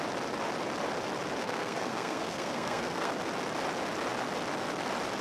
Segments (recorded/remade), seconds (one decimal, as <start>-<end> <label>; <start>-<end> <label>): 0.0-1.4 recorded; 1.4-3.1 remade; 3.1-5.2 recorded